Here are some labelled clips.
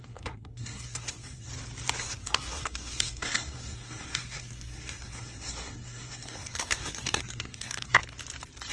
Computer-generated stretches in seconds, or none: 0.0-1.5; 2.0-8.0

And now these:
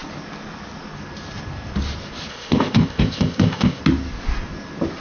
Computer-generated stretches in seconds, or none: 2.3-3.8